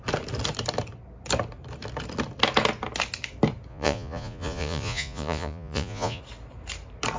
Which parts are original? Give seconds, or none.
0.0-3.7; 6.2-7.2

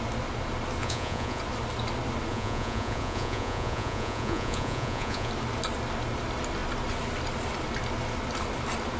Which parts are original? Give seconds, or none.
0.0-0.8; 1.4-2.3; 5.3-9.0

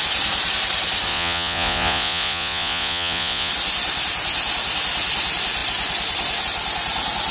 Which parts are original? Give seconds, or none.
0.0-1.1; 3.5-7.3